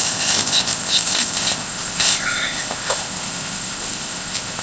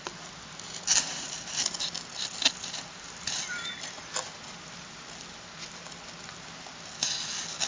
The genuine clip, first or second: second